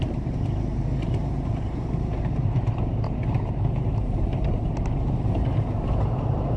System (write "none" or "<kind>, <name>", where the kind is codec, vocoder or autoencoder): vocoder, BigVGAN v2